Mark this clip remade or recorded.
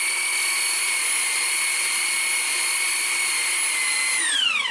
recorded